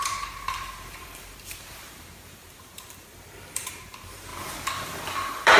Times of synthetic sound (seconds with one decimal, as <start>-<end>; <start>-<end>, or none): 0.0-4.3